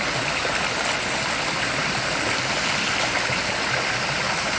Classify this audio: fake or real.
real